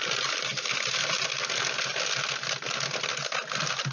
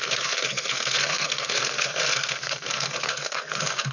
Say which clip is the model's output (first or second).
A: second